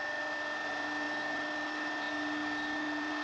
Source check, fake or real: real